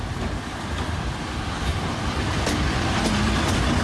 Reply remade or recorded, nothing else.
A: recorded